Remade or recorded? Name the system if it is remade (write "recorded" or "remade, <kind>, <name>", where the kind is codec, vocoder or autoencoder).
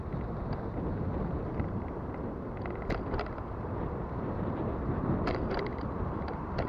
remade, vocoder, BigVGAN v2